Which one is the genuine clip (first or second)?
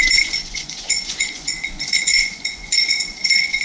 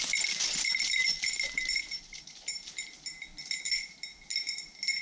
second